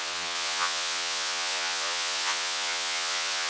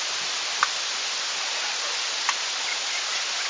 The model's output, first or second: first